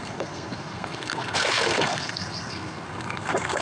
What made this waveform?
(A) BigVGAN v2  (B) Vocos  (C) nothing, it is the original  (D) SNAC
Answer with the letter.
D